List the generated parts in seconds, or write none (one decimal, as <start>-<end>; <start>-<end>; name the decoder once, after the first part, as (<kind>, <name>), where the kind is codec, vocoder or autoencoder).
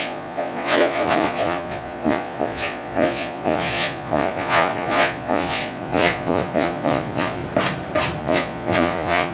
0.0-7.4 (vocoder, Vocos); 8.2-9.3